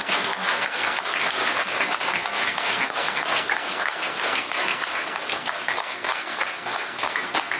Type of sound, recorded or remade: remade